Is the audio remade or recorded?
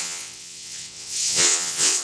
remade